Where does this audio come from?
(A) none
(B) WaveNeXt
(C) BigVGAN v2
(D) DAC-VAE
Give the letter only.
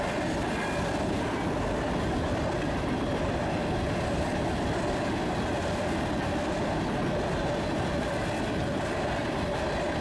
A